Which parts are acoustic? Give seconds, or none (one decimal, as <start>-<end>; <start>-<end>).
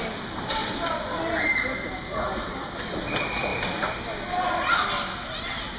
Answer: 0.0-5.8